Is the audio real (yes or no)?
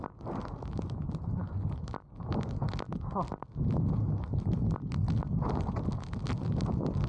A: yes